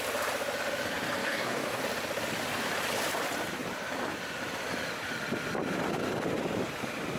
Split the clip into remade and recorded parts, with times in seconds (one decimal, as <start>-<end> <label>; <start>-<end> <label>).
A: 0.0-1.2 recorded; 1.2-1.8 remade; 1.8-7.2 recorded